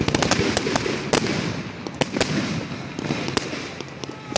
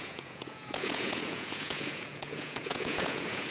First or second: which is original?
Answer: first